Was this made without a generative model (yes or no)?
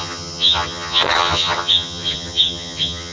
no